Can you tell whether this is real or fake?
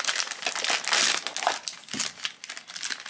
real